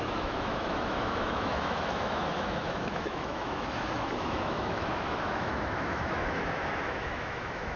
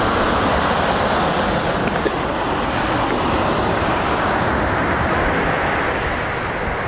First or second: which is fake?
first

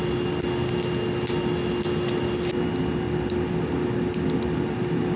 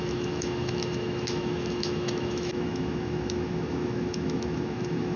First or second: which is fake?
second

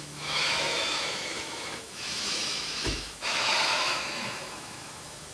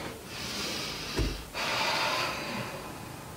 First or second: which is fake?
first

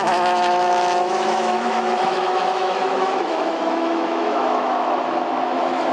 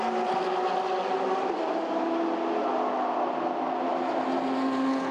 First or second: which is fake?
first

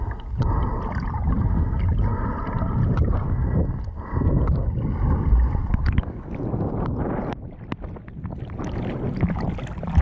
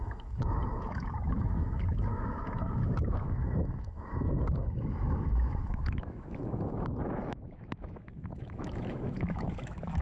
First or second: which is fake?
second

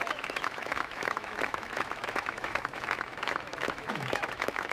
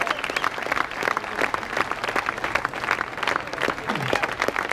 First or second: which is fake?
first